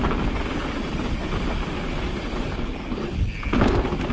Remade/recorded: recorded